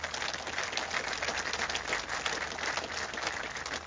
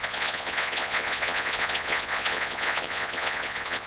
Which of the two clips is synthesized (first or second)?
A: second